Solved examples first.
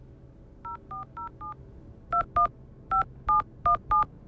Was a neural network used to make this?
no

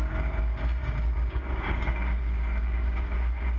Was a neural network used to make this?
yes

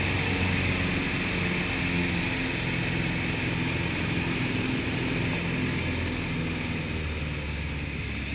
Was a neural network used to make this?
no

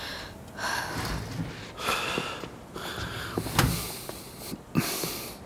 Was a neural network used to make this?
no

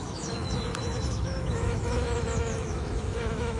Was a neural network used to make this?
yes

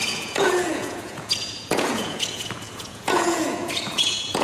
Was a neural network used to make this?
yes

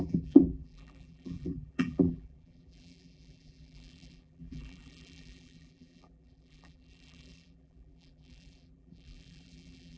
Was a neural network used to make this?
yes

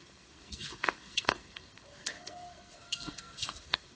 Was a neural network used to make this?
yes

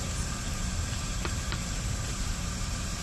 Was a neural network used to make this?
yes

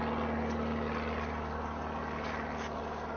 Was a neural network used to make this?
no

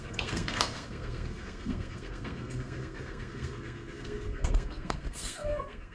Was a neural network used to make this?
yes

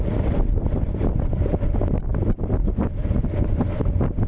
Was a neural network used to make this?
no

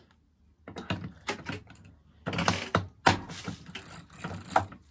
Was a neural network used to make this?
no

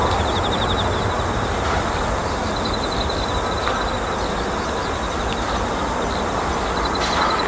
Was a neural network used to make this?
no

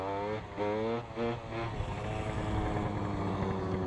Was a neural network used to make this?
no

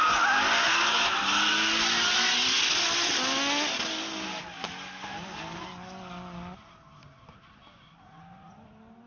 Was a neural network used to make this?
no